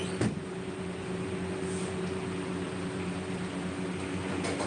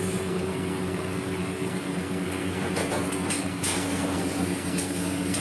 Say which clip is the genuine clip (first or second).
first